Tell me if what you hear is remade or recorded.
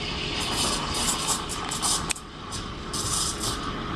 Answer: recorded